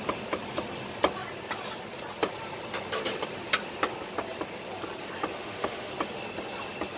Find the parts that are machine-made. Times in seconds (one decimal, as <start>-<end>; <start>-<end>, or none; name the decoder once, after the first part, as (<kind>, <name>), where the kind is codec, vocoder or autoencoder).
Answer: 5.3-5.9 (autoencoder, DAC-VAE)